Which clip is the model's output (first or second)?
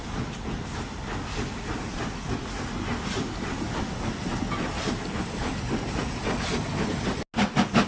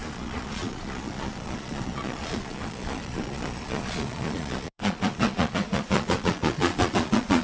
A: second